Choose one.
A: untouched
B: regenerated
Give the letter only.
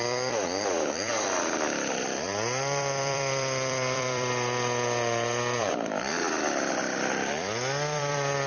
B